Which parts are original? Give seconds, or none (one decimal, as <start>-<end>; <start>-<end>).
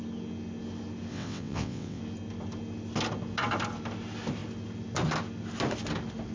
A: 0.0-1.1; 2.0-6.3